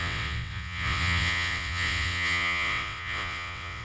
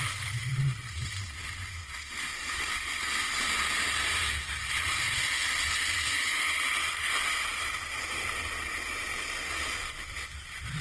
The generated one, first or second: first